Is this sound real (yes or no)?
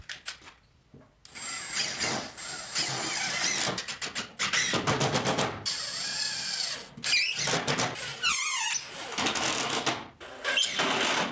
yes